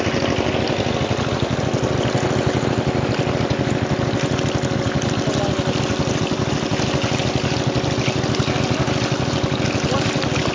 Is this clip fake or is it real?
real